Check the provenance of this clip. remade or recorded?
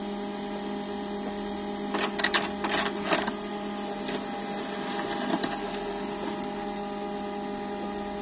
recorded